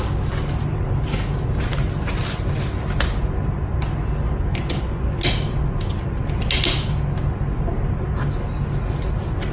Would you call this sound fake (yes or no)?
no